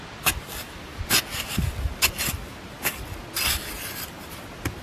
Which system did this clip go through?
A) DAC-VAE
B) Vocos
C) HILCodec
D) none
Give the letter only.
D